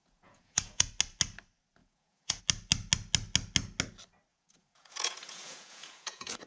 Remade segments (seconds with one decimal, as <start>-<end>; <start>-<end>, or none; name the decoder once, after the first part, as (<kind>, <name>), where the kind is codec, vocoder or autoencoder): 0.0-0.9 (vocoder, Vocos); 1.8-2.4; 4.3-6.5